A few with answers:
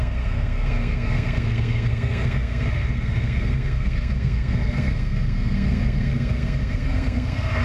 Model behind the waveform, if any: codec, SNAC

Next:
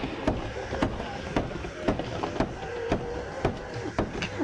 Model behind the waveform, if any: none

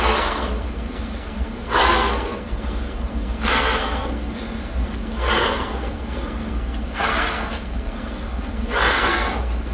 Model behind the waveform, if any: codec, SNAC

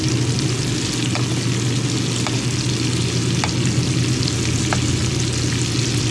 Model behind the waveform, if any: none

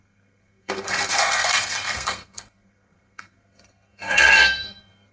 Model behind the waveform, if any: codec, SNAC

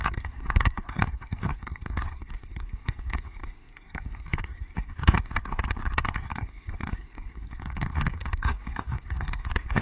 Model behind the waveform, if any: codec, SNAC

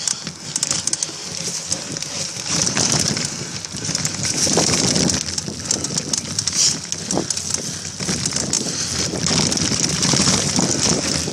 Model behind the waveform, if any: none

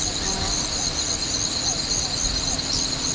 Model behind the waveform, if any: none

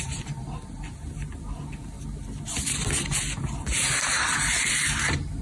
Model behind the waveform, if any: none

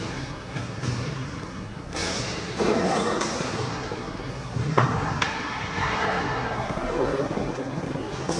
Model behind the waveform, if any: codec, SNAC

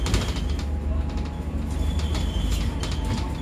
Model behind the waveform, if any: none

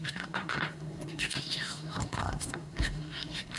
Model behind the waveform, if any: codec, SNAC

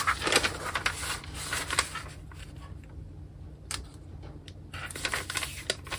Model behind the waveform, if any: none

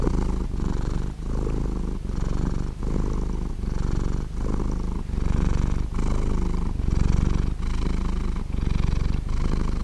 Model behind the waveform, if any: none